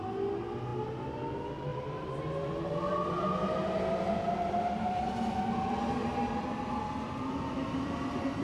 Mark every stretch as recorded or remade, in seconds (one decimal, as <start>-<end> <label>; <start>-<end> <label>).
0.0-8.4 recorded